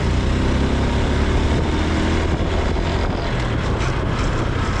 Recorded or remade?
recorded